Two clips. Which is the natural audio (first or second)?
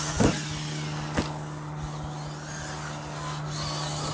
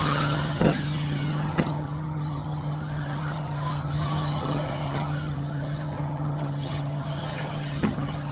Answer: first